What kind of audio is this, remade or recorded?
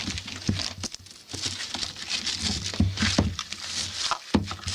recorded